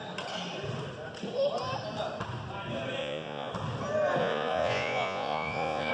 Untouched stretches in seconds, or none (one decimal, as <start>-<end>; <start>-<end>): 0.0-3.0; 3.5-4.2